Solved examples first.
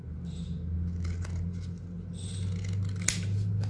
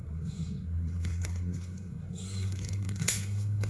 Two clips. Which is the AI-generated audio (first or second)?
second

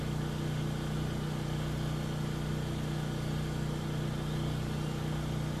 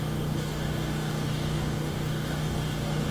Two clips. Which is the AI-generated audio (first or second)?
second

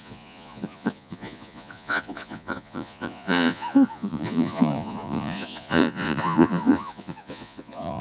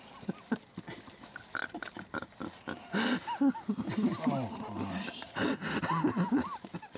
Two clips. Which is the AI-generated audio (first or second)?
first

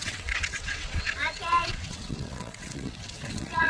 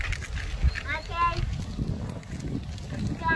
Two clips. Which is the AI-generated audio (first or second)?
first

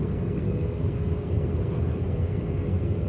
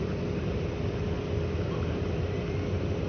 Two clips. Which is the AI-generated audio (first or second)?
first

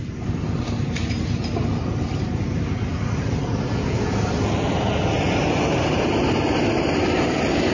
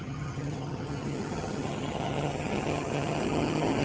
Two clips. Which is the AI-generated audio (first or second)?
second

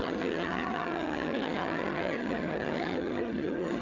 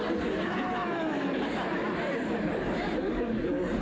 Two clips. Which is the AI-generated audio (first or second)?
first